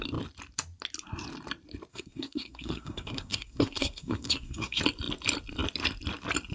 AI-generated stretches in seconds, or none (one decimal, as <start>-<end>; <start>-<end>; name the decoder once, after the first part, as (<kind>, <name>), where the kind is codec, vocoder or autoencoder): 1.9-4.8 (codec, SNAC)